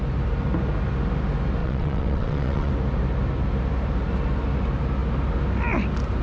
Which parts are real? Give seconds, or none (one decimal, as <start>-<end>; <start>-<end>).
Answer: 0.0-1.6; 2.7-6.2